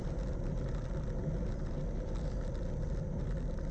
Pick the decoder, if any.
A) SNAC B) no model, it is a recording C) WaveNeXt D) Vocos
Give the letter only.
B